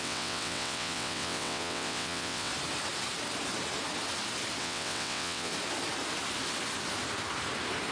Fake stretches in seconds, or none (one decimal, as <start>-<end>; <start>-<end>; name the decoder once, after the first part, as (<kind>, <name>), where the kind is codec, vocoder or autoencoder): 0.0-2.5 (vocoder, WaveNeXt); 4.6-5.5